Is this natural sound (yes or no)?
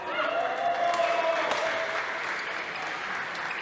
yes